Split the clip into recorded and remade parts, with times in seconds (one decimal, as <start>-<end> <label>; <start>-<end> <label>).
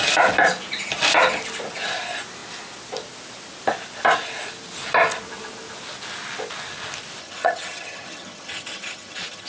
0.0-7.2 recorded; 7.2-9.5 remade